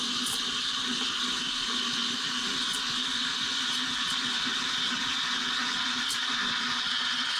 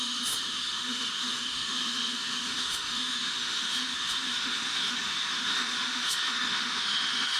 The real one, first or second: first